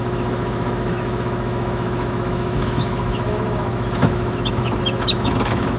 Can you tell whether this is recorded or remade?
remade